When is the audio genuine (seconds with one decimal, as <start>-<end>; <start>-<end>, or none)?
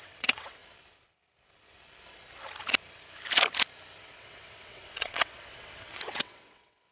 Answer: 0.6-4.0